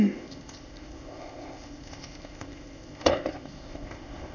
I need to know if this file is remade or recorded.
remade